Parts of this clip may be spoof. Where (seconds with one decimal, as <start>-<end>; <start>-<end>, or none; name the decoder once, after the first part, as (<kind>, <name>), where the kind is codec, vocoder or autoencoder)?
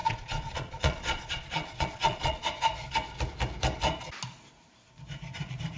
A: 0.0-2.6 (vocoder, Vocos)